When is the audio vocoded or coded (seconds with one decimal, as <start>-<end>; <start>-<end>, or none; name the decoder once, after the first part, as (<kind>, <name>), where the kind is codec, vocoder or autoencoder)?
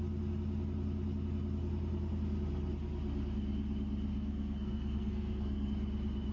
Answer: 4.1-5.7 (codec, SNAC)